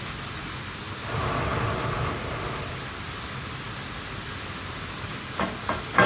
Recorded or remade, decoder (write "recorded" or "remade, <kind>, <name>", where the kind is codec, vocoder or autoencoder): recorded